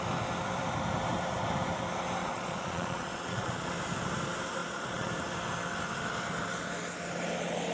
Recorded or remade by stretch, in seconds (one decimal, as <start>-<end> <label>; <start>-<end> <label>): 0.0-2.2 recorded; 2.2-3.7 remade; 3.7-4.6 recorded; 4.6-5.1 remade; 5.1-7.7 recorded